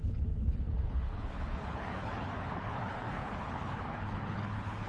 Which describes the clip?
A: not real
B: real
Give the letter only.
A